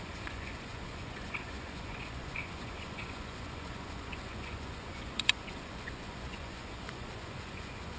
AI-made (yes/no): yes